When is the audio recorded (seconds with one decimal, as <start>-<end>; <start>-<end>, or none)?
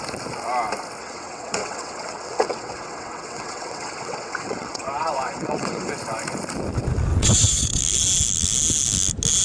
0.0-1.0; 5.9-7.1; 7.8-9.4